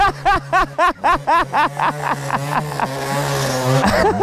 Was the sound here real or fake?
real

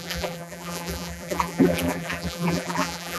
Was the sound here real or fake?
fake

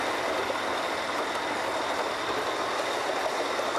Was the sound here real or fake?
real